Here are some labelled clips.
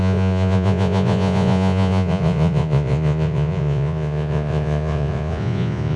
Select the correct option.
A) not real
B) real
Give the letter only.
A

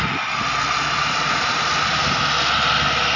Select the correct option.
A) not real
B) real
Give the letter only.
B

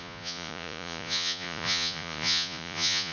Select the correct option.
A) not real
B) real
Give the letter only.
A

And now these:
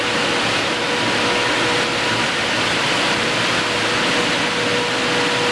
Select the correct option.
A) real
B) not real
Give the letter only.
A